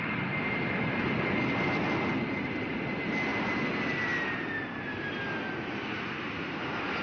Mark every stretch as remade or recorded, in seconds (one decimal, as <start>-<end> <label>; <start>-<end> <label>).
0.0-7.0 recorded